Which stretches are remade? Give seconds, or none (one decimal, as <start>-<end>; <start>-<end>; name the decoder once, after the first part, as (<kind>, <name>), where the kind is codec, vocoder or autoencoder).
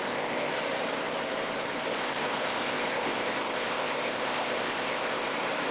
0.0-0.5 (codec, ZipCodec); 1.9-5.3